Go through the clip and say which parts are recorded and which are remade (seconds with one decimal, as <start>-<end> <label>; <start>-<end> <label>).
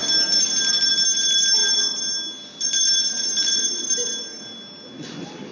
0.0-5.5 recorded